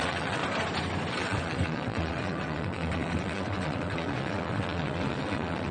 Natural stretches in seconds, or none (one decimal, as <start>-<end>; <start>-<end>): 0.4-1.1